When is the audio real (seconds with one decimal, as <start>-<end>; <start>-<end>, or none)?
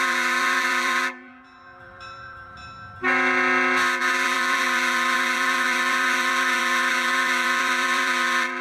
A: 2.6-4.0